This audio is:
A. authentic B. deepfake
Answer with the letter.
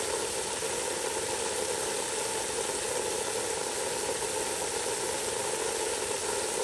A